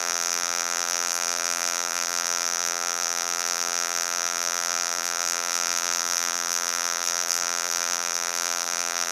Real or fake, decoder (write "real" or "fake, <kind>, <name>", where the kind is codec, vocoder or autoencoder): fake, vocoder, BigVGAN v2